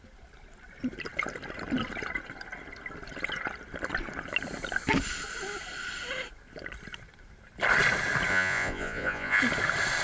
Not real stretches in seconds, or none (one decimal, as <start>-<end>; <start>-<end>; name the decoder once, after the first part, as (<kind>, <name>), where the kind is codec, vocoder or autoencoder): 8.3-9.4 (vocoder, Vocos)